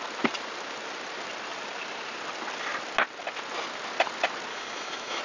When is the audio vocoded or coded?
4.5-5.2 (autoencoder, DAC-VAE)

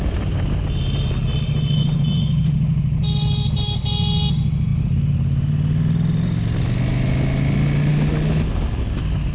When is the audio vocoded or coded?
none

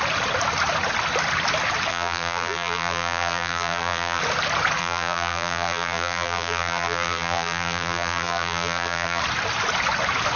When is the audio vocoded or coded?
1.9-4.2 (vocoder, BigVGAN v2); 4.8-9.2